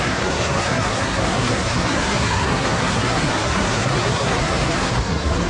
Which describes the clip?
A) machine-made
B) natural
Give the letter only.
A